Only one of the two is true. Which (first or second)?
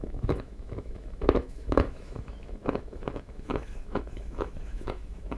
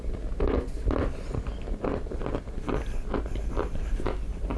second